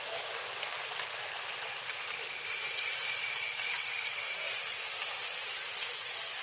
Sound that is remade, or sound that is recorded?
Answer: recorded